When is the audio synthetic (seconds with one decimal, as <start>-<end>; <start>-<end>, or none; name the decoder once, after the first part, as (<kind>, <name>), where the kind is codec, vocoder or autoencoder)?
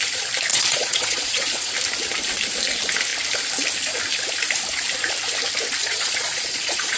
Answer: 0.5-1.7 (vocoder, Vocos); 5.8-7.0